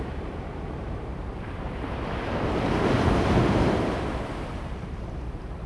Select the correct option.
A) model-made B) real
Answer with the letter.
A